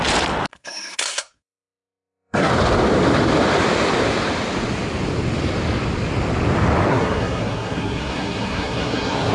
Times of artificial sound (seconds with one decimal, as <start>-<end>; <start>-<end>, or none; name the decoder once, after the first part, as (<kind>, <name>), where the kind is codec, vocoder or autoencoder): 0.5-2.5 (codec, SNAC); 6.9-9.3